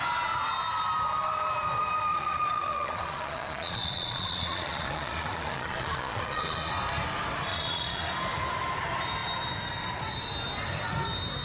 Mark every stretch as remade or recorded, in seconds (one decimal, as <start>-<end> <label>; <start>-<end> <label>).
0.0-2.1 recorded; 2.1-6.7 remade; 6.7-7.5 recorded; 7.5-8.1 remade; 8.1-11.4 recorded